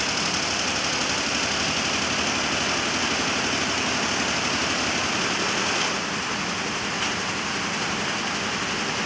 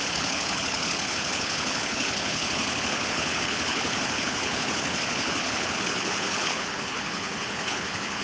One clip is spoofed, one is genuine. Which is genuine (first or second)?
first